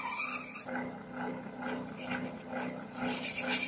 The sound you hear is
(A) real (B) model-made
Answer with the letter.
A